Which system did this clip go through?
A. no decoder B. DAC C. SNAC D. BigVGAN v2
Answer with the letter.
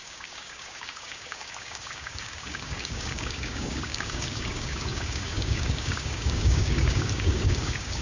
B